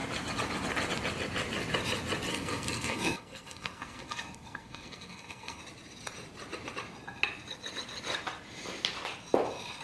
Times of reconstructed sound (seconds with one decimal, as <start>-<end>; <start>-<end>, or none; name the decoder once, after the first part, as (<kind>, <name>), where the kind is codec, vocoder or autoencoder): 2.3-5.6 (codec, SNAC)